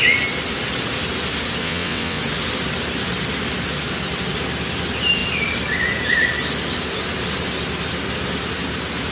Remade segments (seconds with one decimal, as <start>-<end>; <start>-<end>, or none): 1.6-2.2